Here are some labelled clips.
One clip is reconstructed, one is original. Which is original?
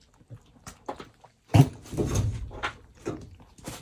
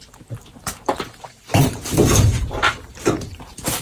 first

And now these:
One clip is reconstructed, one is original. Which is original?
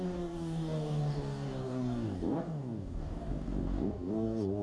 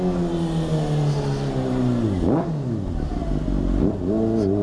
second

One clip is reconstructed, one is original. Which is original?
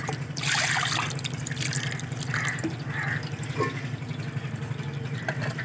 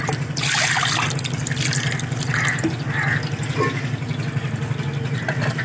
second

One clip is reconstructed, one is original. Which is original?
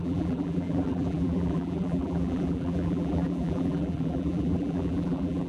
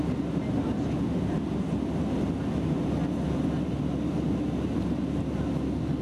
second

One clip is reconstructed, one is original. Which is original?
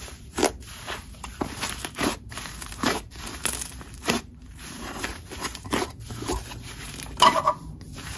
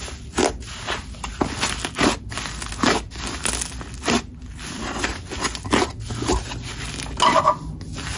second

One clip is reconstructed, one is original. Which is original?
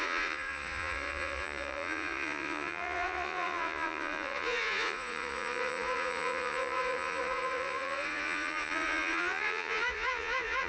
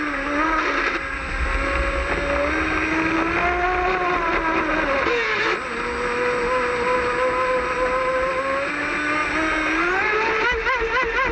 second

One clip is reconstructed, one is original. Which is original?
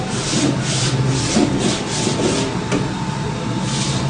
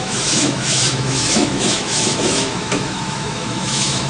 first